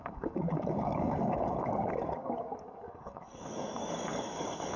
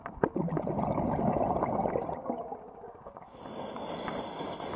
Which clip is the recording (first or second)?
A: second